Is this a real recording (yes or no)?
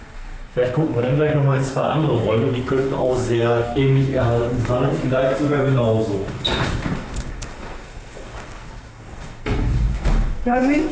no